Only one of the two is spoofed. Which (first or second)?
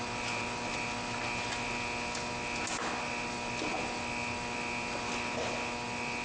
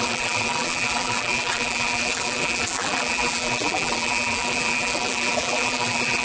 second